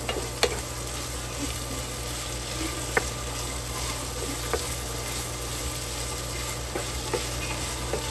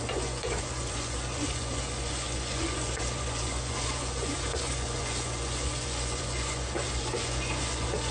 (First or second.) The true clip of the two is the first